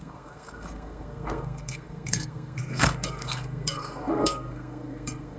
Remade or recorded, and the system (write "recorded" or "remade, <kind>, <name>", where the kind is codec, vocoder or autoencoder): remade, codec, SNAC